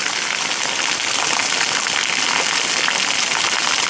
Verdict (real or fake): real